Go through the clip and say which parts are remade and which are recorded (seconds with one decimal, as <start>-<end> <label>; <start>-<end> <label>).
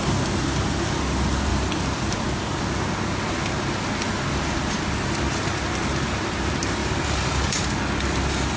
0.0-6.8 recorded; 6.8-7.7 remade; 7.7-8.6 recorded